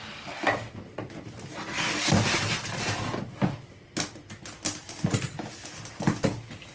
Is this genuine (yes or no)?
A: yes